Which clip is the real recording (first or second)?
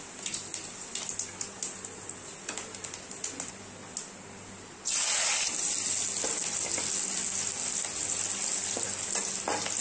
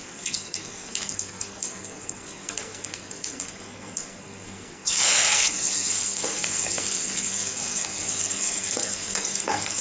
first